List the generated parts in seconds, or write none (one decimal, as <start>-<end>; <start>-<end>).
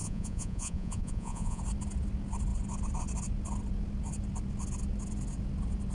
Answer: 0.0-1.6